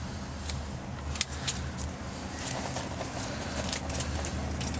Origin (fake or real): real